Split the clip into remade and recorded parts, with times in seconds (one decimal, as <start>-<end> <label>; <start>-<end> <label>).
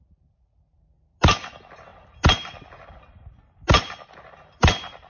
0.0-5.1 recorded